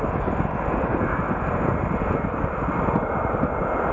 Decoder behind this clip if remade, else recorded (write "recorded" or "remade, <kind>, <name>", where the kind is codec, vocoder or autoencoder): recorded